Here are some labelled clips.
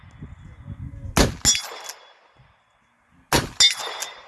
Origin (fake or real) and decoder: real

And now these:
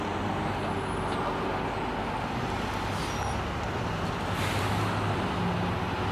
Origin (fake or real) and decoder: real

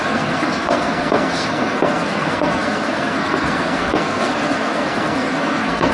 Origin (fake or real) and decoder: fake, codec, SNAC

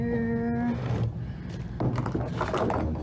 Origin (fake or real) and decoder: real